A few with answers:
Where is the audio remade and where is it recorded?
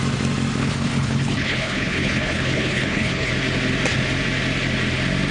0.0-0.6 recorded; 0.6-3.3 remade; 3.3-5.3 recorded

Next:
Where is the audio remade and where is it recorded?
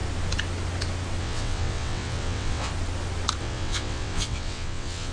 0.0-1.2 recorded; 1.2-2.7 remade; 2.7-3.4 recorded; 3.4-5.1 remade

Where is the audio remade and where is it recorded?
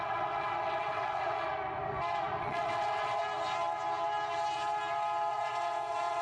0.0-1.5 remade; 1.5-2.4 recorded; 2.4-3.2 remade; 3.2-5.3 recorded; 5.3-6.2 remade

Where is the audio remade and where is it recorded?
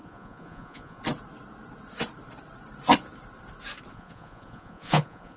0.0-1.0 remade; 1.0-3.9 recorded; 3.9-5.4 remade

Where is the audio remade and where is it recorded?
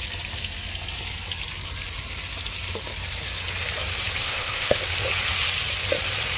0.0-4.2 recorded; 4.2-4.8 remade; 4.8-6.4 recorded